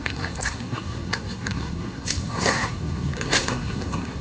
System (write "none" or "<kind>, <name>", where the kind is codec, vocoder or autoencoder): codec, SNAC